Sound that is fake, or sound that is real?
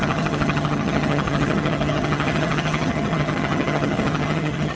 fake